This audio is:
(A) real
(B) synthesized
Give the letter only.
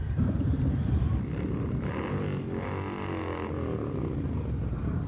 A